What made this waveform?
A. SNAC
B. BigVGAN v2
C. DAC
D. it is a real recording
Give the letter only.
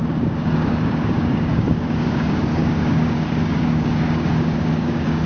C